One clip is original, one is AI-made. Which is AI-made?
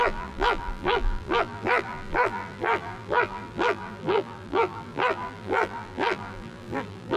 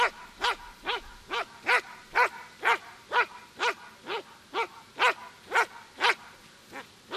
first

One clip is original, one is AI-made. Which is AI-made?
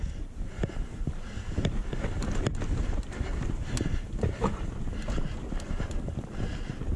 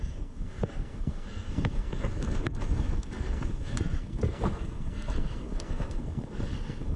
second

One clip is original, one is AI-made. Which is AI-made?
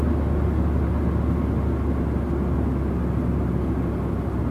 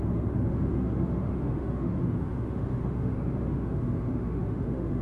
second